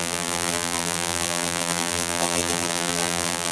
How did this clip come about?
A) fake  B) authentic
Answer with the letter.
A